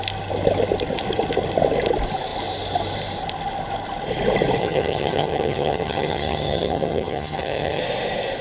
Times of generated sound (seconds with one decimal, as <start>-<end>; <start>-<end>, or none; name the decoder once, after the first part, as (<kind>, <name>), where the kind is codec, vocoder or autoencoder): 4.6-7.8 (vocoder, HiFi-GAN)